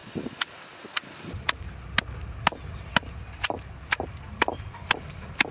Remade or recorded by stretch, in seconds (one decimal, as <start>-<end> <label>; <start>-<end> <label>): 0.0-5.5 recorded